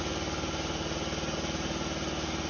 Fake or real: real